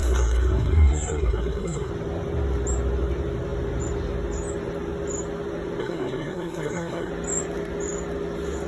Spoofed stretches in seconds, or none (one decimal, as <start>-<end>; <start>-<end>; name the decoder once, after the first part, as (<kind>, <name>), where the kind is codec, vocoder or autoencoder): 0.0-1.9 (codec, SNAC); 5.8-7.1

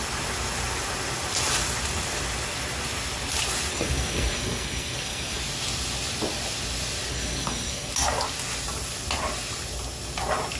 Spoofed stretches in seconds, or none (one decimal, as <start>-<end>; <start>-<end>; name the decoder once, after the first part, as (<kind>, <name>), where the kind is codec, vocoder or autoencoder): 3.7-5.4 (codec, SNAC); 7.1-7.9

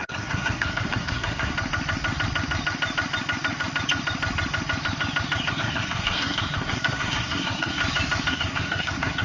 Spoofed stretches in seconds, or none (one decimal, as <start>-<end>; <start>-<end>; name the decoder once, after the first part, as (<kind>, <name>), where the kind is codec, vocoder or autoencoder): 0.0-1.5 (codec, SNAC); 5.5-7.8; 8.3-9.2

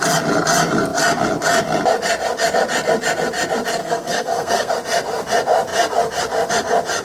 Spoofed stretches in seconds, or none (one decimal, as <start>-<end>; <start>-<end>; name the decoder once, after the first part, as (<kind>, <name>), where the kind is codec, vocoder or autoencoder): 3.8-4.7 (codec, SNAC)